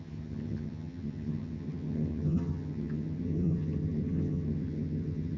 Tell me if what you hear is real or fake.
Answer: fake